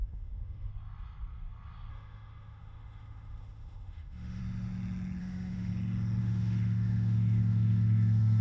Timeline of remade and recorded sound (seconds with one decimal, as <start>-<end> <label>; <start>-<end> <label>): 0.0-0.7 remade; 0.7-1.9 recorded; 1.9-4.4 remade; 4.4-5.2 recorded; 5.2-5.7 remade; 5.7-6.2 recorded; 6.2-8.4 remade